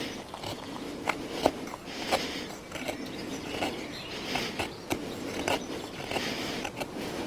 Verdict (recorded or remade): recorded